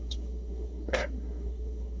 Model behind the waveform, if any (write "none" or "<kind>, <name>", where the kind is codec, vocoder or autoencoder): codec, SNAC